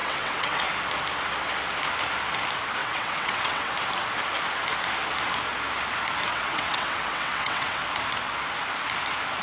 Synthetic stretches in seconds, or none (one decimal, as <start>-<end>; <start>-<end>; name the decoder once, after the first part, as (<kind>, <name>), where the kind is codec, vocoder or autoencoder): 0.0-0.7 (vocoder, WaveNeXt); 2.8-3.7; 6.3-7.8